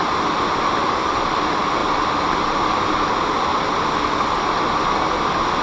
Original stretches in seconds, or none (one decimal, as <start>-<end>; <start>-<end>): 0.0-5.6